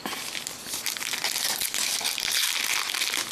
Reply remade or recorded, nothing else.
recorded